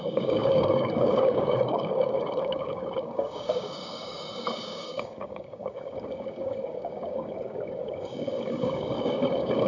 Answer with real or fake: fake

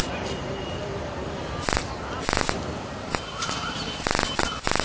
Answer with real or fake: real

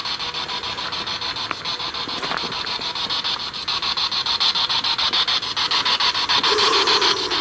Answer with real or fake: real